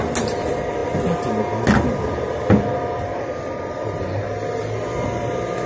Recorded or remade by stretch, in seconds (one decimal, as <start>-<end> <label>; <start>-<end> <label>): 0.0-5.7 recorded